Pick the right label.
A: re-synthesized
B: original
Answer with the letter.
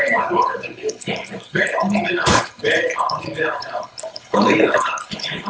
A